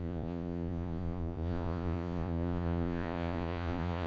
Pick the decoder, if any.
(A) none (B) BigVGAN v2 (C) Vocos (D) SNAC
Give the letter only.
C